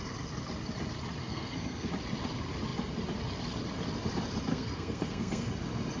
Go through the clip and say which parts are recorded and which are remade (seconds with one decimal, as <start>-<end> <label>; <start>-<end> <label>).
0.0-1.2 recorded; 1.2-1.9 remade; 1.9-4.5 recorded; 4.5-5.5 remade; 5.5-6.0 recorded